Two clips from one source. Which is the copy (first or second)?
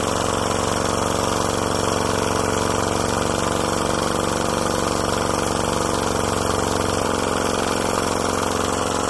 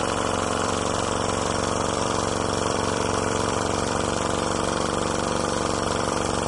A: second